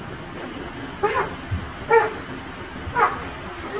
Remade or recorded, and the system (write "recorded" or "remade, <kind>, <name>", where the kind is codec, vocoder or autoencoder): recorded